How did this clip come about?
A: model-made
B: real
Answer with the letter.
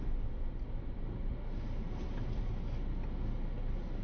B